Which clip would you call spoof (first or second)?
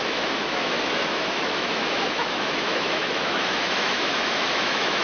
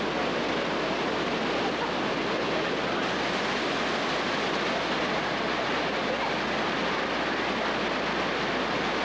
first